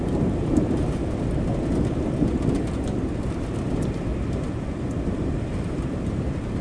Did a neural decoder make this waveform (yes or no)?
no